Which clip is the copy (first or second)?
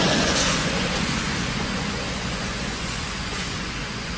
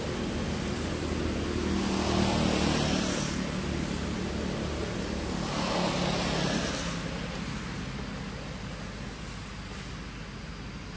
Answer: first